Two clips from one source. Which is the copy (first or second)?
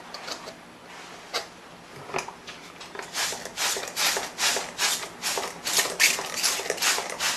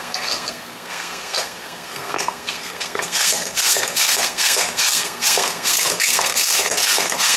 second